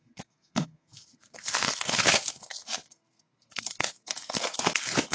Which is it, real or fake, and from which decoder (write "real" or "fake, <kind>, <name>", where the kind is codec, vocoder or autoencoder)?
fake, codec, SNAC